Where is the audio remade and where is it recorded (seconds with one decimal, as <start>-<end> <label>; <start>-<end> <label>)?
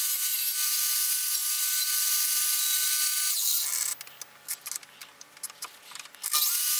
0.0-5.0 recorded; 5.0-5.8 remade; 5.8-6.8 recorded